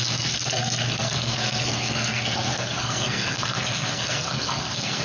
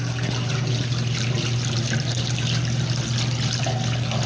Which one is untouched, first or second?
second